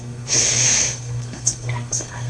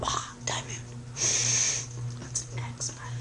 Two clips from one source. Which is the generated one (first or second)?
first